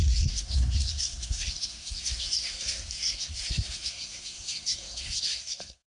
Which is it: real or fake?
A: fake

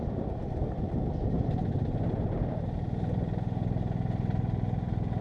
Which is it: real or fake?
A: real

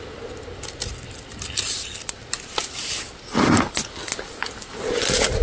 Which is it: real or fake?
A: real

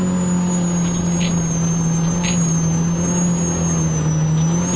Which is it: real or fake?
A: real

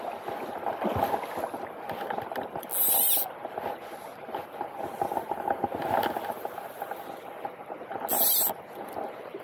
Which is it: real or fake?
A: real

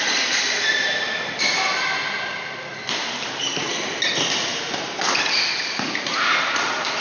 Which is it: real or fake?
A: real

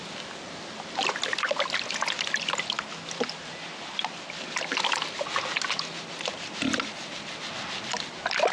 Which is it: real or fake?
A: real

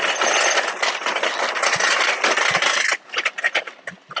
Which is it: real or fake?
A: real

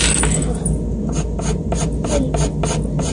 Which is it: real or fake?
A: real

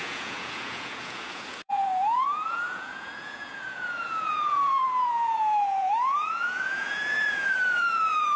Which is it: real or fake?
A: fake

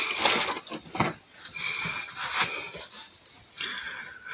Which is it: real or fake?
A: real